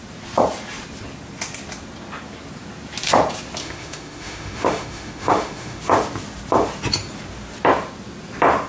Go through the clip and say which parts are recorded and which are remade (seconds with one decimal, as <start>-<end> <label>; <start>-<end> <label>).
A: 0.0-3.6 recorded; 3.6-5.8 remade; 5.8-8.7 recorded